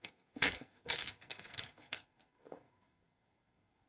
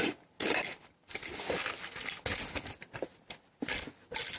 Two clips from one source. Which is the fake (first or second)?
first